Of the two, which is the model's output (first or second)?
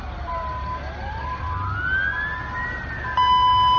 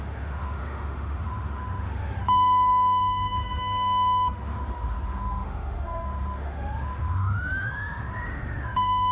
second